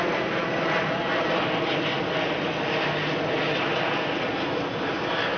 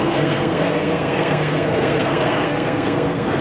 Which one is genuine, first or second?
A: first